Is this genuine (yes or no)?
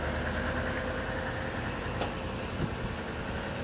yes